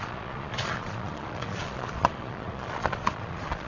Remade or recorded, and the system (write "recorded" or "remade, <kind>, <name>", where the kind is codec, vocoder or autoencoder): remade, vocoder, Vocos